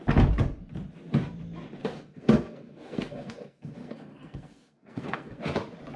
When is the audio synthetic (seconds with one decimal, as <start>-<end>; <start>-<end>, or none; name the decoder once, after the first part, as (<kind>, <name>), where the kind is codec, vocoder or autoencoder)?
1.8-5.4 (codec, SNAC)